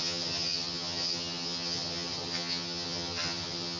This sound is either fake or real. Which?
fake